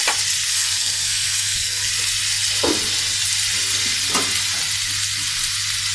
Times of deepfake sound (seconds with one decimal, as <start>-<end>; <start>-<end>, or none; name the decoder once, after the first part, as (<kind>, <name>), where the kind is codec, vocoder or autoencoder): 0.5-1.9 (codec, SNAC)